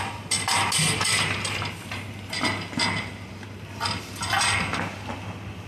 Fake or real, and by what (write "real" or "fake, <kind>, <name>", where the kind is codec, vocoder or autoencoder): real